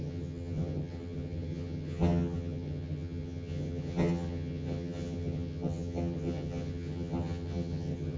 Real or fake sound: fake